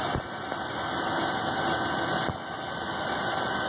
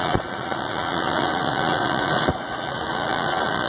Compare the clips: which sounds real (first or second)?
first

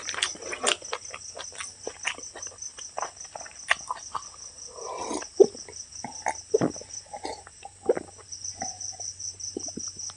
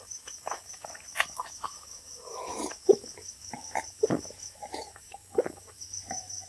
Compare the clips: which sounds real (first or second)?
first